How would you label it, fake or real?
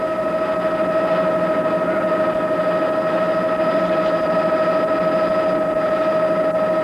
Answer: real